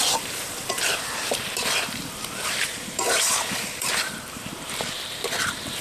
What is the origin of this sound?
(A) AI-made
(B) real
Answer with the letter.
A